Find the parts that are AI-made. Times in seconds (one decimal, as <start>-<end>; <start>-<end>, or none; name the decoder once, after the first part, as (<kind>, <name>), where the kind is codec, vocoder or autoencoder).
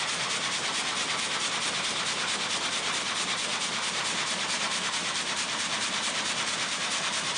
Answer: 3.5-7.4 (vocoder, BigVGAN v2)